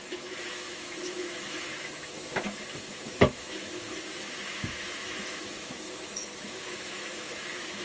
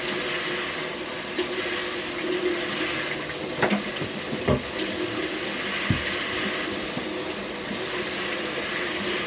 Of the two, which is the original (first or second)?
second